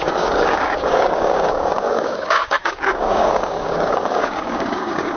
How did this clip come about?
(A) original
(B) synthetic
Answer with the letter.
B